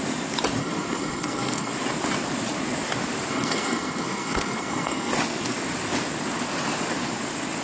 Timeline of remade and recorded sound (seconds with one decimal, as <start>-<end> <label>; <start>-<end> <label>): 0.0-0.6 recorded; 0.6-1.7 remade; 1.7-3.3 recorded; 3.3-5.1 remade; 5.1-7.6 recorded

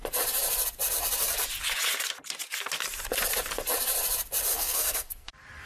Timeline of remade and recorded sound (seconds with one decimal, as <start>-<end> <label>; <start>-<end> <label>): 0.0-4.5 recorded; 4.5-5.3 remade; 5.3-5.7 recorded

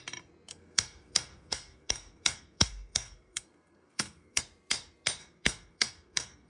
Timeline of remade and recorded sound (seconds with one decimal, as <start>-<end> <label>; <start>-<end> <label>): 0.0-0.5 recorded; 0.5-4.4 remade; 4.4-5.2 recorded; 5.2-6.5 remade